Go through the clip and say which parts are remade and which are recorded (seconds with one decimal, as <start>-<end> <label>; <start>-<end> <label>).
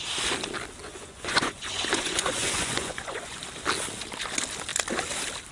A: 0.0-0.8 recorded; 0.8-3.4 remade; 3.4-5.5 recorded